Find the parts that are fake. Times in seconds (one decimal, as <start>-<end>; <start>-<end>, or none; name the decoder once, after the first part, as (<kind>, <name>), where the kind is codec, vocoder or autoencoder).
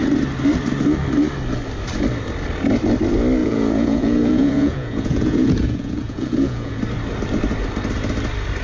3.4-6.8 (vocoder, Vocos)